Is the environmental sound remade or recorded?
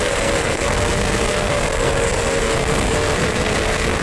remade